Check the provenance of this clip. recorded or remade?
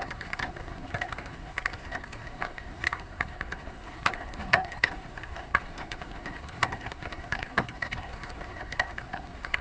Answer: remade